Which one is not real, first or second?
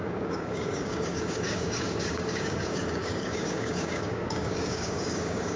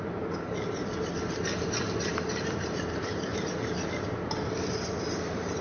first